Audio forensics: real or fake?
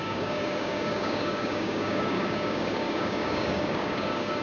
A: fake